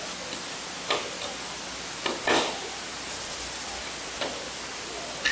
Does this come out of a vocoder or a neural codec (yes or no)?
no